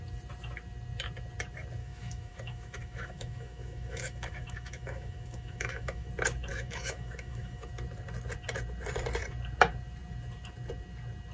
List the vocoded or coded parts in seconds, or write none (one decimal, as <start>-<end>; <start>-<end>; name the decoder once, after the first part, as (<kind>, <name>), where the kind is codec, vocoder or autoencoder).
1.8-6.1 (autoencoder, DAC-VAE); 6.5-7.7